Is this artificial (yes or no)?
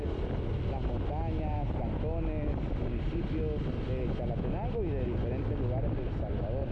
no